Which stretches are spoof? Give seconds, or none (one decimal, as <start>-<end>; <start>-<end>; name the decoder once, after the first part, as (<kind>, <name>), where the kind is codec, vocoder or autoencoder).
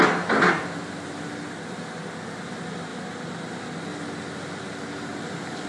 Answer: none